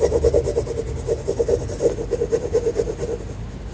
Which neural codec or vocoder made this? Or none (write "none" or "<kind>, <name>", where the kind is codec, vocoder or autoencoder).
none